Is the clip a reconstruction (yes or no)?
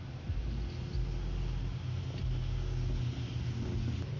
no